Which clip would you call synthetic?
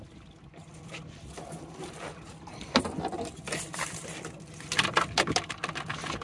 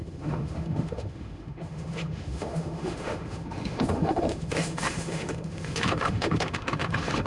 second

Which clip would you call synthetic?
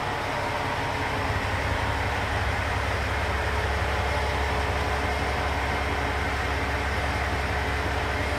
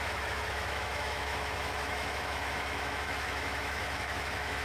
second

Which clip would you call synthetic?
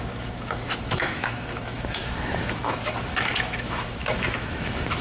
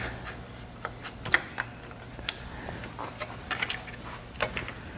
first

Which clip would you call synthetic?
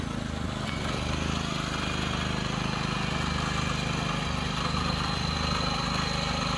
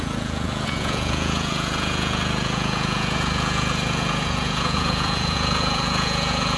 second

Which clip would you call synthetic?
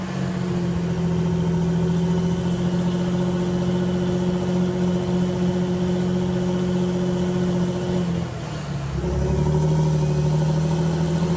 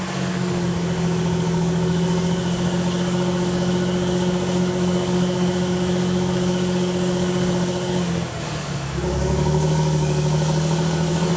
second